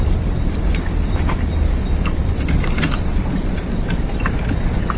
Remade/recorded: remade